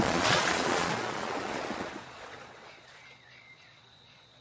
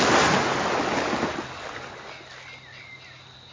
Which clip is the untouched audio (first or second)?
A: second